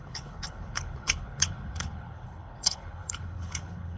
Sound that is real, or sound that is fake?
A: fake